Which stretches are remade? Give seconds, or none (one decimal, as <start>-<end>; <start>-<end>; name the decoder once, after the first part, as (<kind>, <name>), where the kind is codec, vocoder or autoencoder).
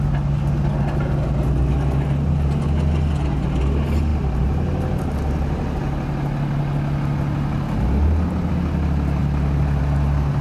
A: none